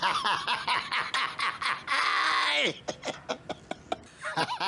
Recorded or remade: recorded